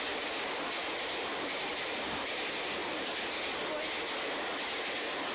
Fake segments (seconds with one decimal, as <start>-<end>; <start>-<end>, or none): 1.7-2.3; 2.8-3.9